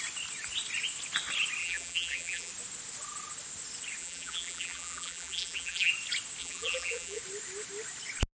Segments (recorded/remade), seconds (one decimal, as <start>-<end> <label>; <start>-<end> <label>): 0.0-1.6 recorded; 1.6-2.5 remade; 2.5-4.0 recorded; 4.0-5.9 remade; 5.9-6.4 recorded; 6.4-7.2 remade; 7.2-8.4 recorded